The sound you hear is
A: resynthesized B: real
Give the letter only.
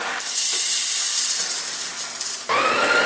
B